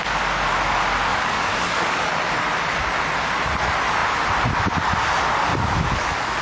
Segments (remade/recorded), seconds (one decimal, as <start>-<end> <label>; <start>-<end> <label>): 0.0-1.1 recorded; 1.1-2.1 remade; 2.1-5.5 recorded; 5.5-6.4 remade

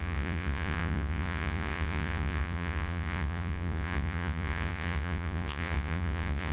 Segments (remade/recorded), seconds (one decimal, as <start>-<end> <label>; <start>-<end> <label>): 0.0-6.5 remade

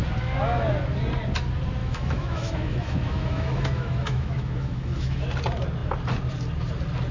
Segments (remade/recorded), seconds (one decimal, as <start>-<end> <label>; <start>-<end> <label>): 0.0-1.8 recorded; 1.8-5.2 remade; 5.2-7.1 recorded

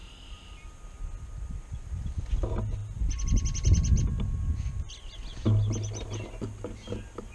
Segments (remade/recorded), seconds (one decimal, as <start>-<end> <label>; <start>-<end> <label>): 0.0-7.3 recorded

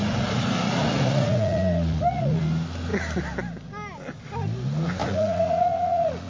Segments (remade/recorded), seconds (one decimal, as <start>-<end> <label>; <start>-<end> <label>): 0.0-2.4 remade; 2.4-5.0 recorded; 5.0-6.3 remade